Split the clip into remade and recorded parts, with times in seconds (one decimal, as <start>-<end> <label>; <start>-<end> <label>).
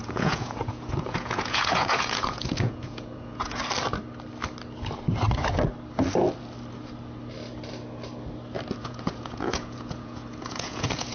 0.0-3.6 remade; 3.6-8.8 recorded; 8.8-11.1 remade